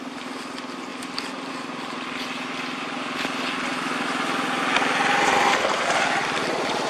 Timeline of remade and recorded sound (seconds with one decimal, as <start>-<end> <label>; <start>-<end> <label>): 0.0-6.9 recorded